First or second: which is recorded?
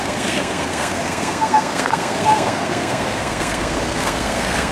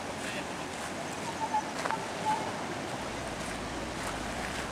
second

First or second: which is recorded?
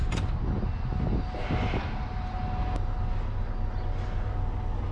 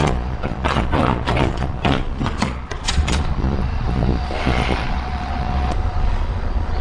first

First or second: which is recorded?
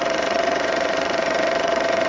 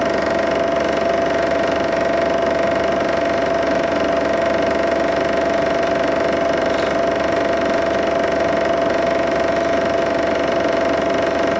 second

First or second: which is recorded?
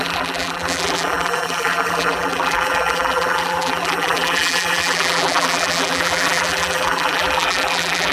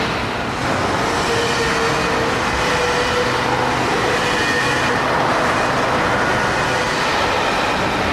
second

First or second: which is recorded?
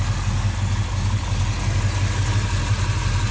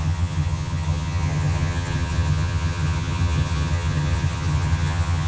first